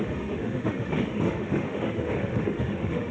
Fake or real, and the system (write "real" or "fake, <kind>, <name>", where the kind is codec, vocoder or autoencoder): fake, autoencoder, DAC-VAE